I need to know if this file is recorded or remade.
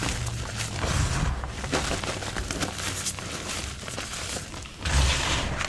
recorded